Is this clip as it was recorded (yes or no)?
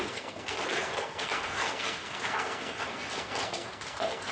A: no